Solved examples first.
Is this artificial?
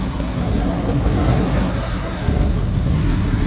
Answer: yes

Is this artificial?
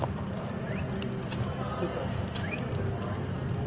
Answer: no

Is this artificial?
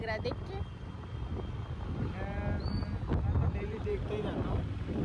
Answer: no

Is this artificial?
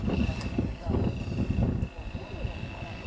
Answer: no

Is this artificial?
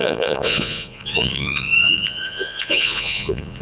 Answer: yes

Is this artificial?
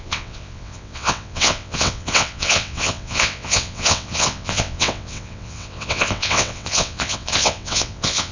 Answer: yes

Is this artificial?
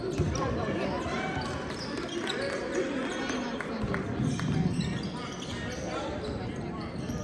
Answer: yes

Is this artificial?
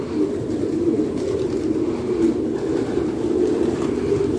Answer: no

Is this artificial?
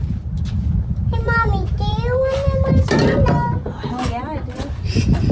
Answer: no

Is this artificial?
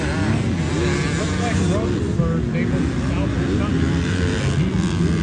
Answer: no